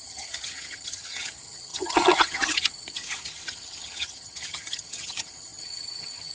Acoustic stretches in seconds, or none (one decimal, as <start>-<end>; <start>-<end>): none